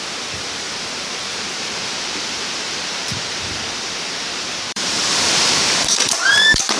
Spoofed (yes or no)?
yes